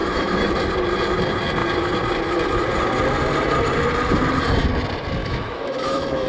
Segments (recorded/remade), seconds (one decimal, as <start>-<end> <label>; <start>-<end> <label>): 0.0-0.5 remade; 0.5-5.2 recorded; 5.2-6.3 remade